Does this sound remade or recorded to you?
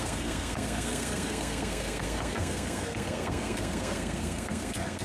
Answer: remade